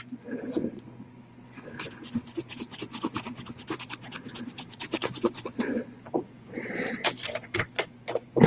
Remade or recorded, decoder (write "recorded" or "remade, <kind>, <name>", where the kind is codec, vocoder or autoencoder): remade, vocoder, Vocos